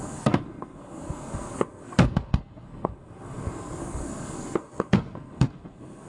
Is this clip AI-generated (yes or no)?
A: yes